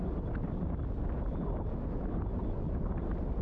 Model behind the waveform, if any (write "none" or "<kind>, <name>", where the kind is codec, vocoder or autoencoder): none